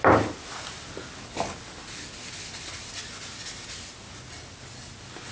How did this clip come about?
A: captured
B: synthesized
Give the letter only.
A